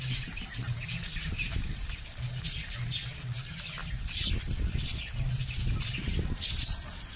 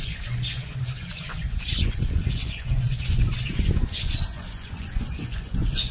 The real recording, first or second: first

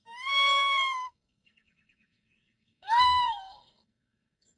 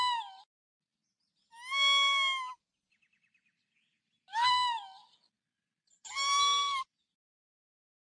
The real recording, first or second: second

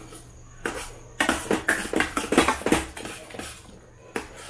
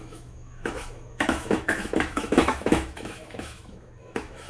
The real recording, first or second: first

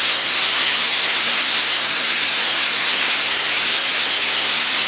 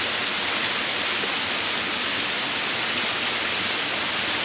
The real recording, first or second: second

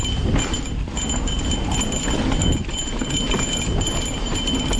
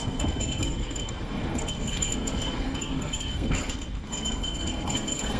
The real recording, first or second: first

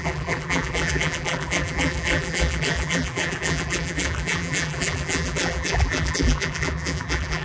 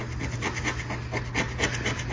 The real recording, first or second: second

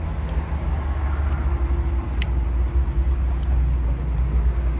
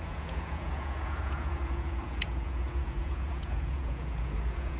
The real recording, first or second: first